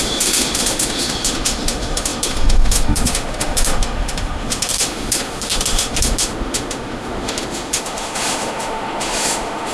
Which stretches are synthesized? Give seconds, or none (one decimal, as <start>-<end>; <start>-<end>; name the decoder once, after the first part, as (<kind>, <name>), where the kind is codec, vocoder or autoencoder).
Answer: 0.0-9.7 (autoencoder, DAC-VAE)